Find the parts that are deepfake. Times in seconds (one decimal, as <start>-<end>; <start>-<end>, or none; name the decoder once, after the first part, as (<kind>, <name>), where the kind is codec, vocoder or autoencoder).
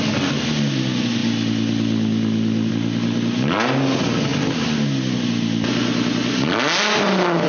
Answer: none